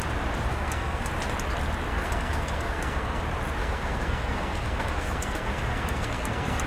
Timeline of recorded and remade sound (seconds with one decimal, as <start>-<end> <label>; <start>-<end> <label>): 0.0-0.5 recorded; 0.5-1.1 remade; 1.1-1.9 recorded; 1.9-3.2 remade; 3.2-3.6 recorded; 3.6-6.7 remade